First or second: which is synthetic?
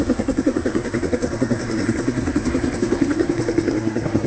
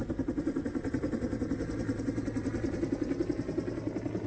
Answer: first